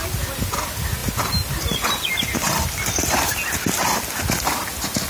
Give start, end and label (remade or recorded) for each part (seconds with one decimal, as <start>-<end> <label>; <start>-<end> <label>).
0.0-5.1 recorded